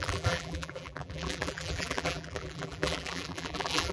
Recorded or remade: remade